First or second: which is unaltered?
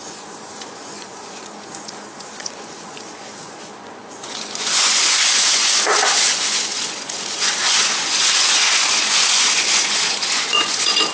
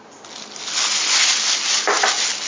second